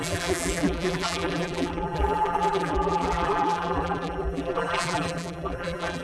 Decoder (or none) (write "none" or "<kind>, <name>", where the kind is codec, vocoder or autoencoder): vocoder, BigVGAN v2